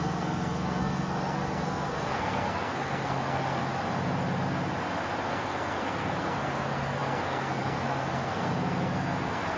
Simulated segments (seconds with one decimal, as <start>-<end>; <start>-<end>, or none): 0.0-3.6; 5.3-9.6